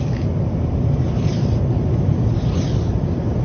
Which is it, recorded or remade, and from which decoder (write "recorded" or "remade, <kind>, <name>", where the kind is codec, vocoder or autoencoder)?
recorded